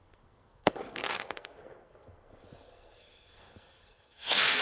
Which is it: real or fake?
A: fake